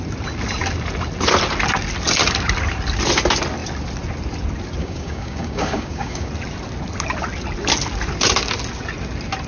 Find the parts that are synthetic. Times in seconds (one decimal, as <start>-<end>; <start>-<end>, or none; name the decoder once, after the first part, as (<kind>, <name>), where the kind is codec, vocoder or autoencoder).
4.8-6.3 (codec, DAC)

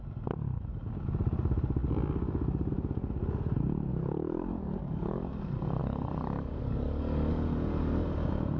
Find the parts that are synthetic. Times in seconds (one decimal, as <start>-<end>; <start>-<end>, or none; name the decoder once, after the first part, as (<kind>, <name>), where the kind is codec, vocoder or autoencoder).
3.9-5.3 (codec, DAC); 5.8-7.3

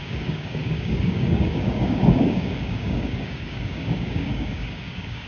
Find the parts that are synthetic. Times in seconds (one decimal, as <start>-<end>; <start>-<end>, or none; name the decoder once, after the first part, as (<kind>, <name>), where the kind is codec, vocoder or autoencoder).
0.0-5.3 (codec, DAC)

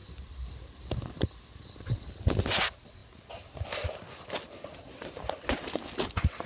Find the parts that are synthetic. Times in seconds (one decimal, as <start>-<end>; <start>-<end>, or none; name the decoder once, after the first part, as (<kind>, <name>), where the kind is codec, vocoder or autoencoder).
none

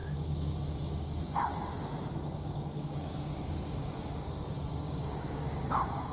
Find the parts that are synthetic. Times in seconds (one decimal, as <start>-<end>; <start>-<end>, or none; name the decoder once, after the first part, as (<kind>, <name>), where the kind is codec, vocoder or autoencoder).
0.0-1.5 (codec, DAC); 2.2-6.1

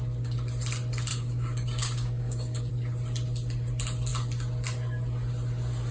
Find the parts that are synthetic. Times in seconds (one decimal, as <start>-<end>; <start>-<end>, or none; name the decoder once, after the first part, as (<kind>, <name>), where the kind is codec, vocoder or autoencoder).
1.1-2.7 (codec, DAC)

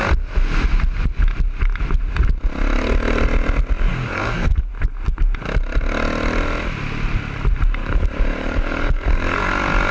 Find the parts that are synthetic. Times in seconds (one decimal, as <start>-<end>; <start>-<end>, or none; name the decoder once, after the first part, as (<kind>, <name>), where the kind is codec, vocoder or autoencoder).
3.9-4.7 (codec, DAC); 7.8-9.5

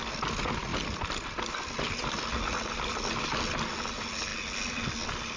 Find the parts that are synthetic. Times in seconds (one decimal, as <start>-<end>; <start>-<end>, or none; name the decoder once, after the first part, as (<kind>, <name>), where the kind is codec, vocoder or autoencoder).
none